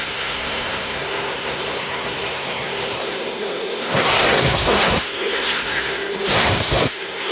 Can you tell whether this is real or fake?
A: fake